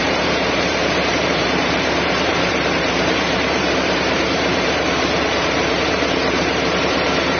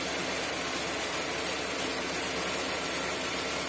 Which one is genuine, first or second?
second